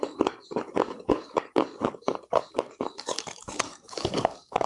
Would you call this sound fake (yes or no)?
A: yes